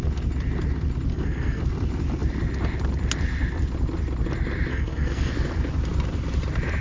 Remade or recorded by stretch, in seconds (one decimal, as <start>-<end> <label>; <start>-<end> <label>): 0.0-1.1 recorded; 1.1-1.6 remade; 1.6-4.7 recorded; 4.7-5.3 remade; 5.3-6.8 recorded